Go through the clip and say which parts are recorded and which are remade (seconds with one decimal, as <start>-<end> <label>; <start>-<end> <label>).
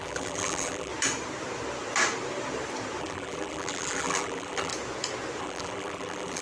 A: 0.0-0.9 remade; 0.9-3.0 recorded; 3.0-4.7 remade; 4.7-5.4 recorded; 5.4-6.4 remade